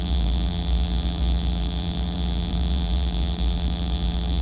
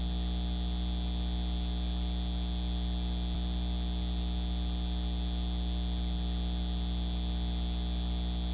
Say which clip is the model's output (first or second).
first